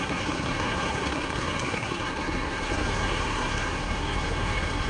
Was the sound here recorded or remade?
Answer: remade